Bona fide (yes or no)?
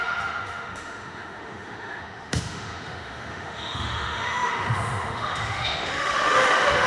no